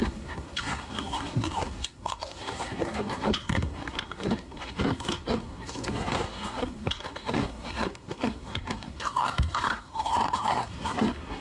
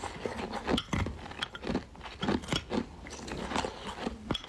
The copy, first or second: first